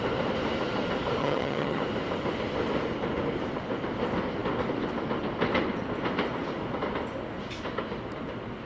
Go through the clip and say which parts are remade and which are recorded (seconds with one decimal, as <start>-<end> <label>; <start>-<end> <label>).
0.0-1.2 recorded; 1.2-1.8 remade; 1.8-8.7 recorded